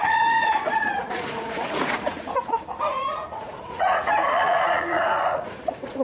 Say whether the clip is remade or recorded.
remade